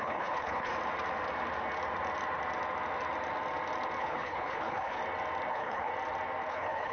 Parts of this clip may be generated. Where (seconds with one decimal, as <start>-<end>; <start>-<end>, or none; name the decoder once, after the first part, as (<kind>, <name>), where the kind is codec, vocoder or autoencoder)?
0.0-0.7 (codec, HILCodec); 4.0-5.0; 5.5-5.9; 6.5-6.9